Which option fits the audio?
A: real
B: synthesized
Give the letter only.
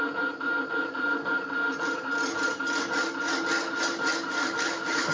A